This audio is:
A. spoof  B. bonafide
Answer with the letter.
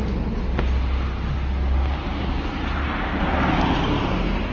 B